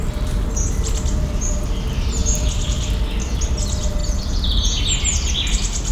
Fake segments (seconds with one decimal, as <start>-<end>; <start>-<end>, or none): 4.0-4.8